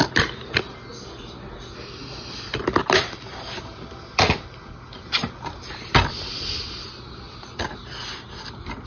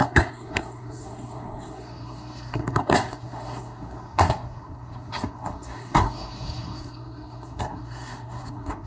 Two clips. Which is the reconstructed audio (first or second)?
second